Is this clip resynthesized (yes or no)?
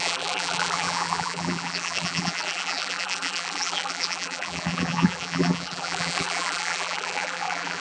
yes